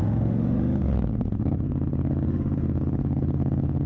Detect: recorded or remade remade